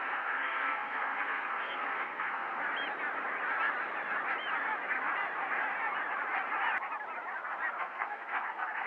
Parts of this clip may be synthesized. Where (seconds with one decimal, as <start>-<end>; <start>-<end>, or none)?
0.0-2.6; 7.8-8.9